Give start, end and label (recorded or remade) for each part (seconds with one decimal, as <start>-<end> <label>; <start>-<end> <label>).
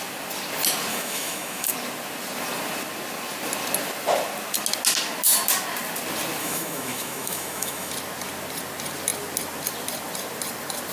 0.0-0.9 recorded; 0.9-1.7 remade; 1.7-6.4 recorded; 6.4-7.9 remade; 7.9-10.9 recorded